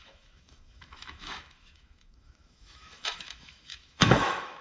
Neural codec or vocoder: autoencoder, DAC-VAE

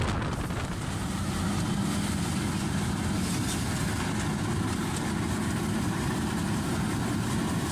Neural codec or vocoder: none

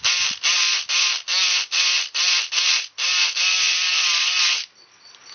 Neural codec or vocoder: none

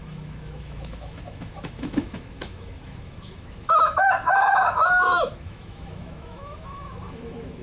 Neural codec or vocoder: autoencoder, DAC-VAE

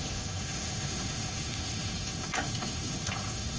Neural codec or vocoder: autoencoder, DAC-VAE